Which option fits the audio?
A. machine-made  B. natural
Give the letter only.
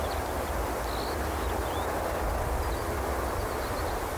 B